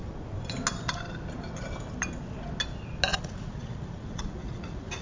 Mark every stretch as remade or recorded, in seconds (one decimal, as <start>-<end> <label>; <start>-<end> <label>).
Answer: 0.0-3.1 recorded; 3.1-5.0 remade